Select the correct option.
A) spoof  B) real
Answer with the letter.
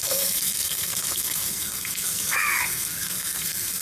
A